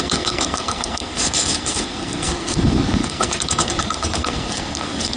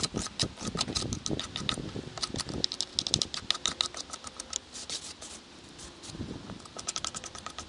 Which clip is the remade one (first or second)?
first